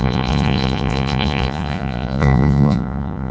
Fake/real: fake